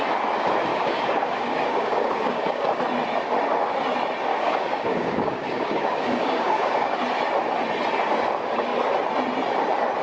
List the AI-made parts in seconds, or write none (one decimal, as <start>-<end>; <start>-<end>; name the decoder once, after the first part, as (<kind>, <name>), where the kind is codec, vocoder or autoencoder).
0.7-2.8 (codec, DAC); 4.3-7.0